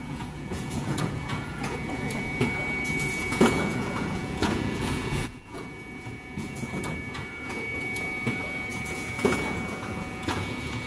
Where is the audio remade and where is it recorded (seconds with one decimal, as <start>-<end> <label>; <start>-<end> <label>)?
0.0-10.9 remade